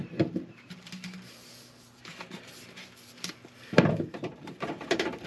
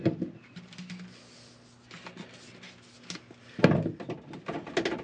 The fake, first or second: first